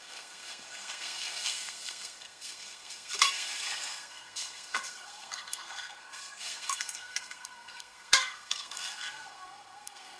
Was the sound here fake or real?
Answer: fake